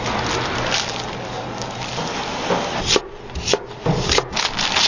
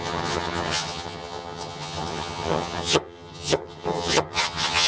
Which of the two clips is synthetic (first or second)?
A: second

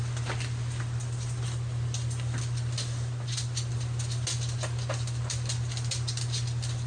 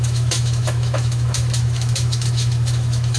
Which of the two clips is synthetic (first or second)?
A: second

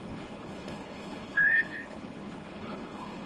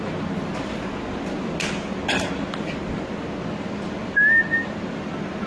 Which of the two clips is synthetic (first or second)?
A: first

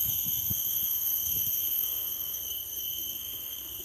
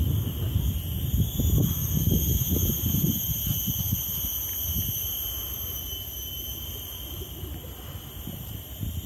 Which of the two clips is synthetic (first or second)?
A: first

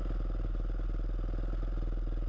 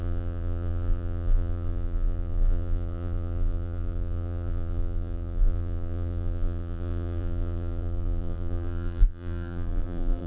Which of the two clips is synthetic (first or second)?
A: second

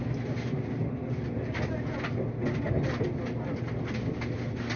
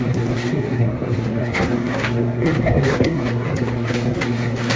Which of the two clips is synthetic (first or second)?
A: second